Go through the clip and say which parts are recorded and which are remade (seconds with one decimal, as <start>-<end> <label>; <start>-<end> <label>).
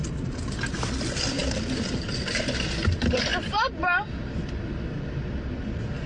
0.0-6.1 remade